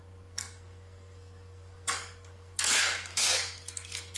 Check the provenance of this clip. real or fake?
fake